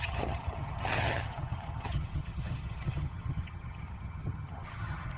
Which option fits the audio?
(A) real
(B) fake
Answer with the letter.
B